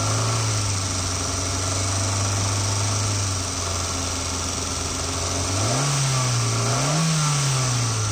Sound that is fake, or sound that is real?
real